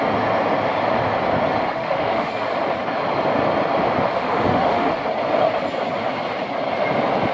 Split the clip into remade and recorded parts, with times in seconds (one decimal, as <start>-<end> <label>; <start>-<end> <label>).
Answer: 0.0-1.6 recorded; 1.6-2.3 remade; 2.3-4.1 recorded; 4.1-5.0 remade; 5.0-7.3 recorded